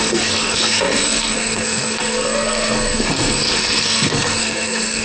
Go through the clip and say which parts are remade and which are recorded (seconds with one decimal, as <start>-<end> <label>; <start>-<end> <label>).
0.0-5.0 remade